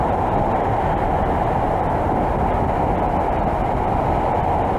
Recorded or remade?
recorded